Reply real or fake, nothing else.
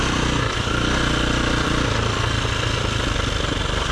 fake